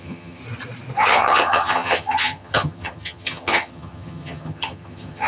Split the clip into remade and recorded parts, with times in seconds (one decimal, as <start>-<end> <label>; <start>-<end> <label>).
0.0-0.4 remade; 0.4-1.0 recorded; 1.0-5.3 remade

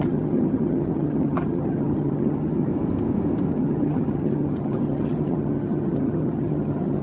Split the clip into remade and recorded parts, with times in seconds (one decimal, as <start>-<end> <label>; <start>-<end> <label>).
0.0-2.7 remade; 2.7-3.5 recorded; 3.5-7.0 remade

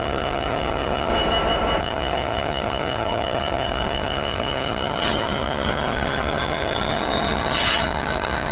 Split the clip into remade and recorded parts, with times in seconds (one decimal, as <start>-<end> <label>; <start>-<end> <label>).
0.0-1.1 remade; 1.1-1.8 recorded; 1.8-8.5 remade

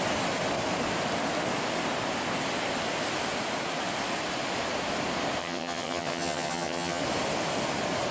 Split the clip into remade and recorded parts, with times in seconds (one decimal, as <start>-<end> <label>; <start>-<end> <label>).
0.0-5.4 recorded; 5.4-7.0 remade; 7.0-8.1 recorded

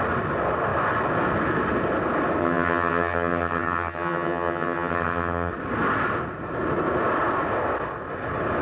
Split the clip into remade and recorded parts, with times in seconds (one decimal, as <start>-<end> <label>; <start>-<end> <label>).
0.0-2.4 recorded; 2.4-5.5 remade; 5.5-8.6 recorded

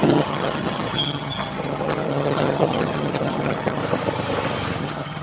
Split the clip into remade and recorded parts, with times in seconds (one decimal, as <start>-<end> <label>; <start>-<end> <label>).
0.0-3.8 remade; 3.8-4.8 recorded; 4.8-5.2 remade

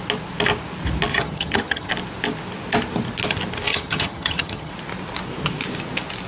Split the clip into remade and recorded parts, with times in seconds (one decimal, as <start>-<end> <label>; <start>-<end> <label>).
0.0-1.1 recorded; 1.1-1.9 remade; 1.9-3.7 recorded; 3.7-4.7 remade; 4.7-6.3 recorded